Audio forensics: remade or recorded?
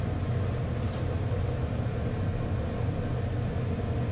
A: recorded